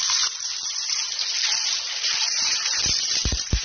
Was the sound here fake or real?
fake